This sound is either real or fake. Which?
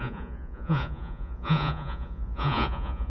fake